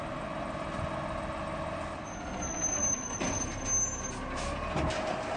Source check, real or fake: real